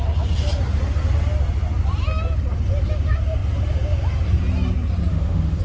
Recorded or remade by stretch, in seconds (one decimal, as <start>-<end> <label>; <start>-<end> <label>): 0.0-5.1 recorded; 5.1-5.6 remade